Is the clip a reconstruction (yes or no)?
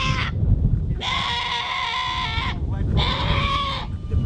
no